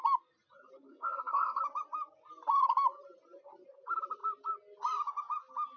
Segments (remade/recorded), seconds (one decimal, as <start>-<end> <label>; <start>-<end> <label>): 0.0-0.9 recorded; 0.9-1.6 remade; 1.6-5.8 recorded

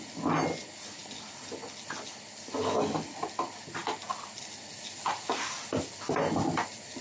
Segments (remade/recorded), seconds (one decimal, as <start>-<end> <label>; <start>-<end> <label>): 0.0-7.0 recorded

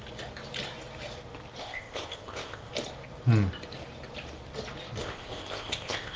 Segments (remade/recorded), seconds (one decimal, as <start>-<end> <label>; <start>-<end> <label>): 0.0-1.6 recorded; 1.6-2.7 remade; 2.7-5.0 recorded; 5.0-6.2 remade

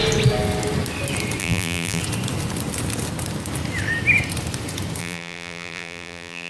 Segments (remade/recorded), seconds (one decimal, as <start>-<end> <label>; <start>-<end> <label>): 0.0-1.4 recorded; 1.4-2.0 remade; 2.0-5.0 recorded; 5.0-6.5 remade